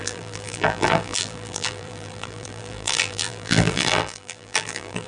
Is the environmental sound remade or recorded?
remade